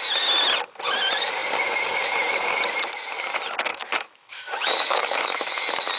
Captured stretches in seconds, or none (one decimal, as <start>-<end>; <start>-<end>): 0.0-3.7; 5.6-6.0